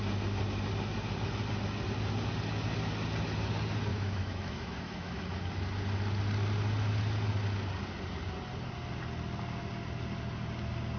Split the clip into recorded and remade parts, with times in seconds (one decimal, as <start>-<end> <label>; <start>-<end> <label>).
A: 0.0-3.9 recorded; 3.9-5.2 remade; 5.2-11.0 recorded